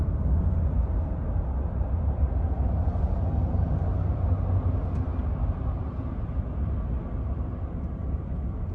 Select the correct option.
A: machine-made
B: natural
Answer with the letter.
B